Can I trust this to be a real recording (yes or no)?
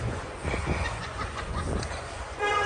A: no